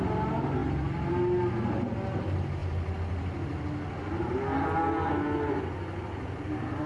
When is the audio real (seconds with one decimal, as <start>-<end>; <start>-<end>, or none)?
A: 0.0-6.9